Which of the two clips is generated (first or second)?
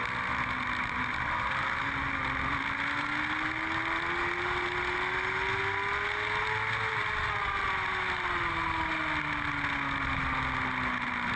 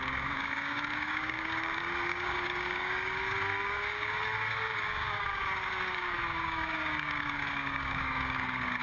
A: second